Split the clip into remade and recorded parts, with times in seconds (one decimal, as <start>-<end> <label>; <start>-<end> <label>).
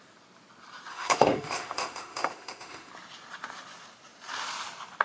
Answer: 0.0-0.9 recorded; 0.9-2.9 remade; 2.9-5.0 recorded